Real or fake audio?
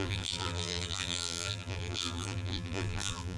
fake